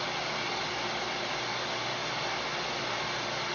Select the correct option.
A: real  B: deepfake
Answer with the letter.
A